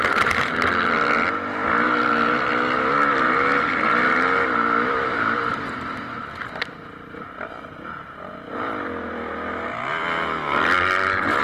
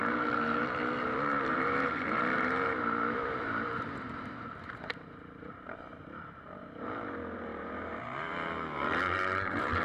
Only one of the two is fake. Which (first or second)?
second